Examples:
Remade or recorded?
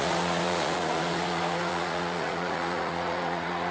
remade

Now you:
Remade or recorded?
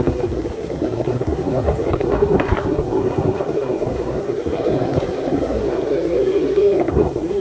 remade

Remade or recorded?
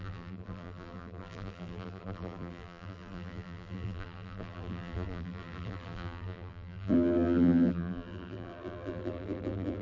remade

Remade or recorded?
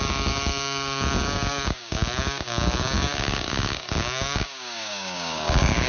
remade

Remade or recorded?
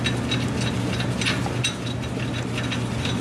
recorded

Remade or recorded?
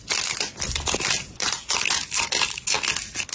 recorded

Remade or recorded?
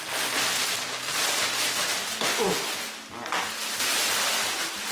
recorded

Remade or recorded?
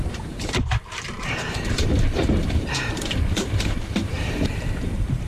remade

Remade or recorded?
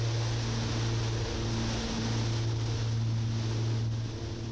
recorded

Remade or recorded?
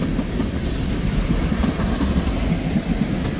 recorded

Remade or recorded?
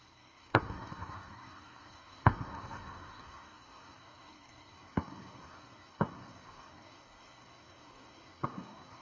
remade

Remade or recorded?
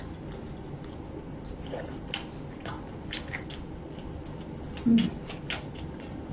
recorded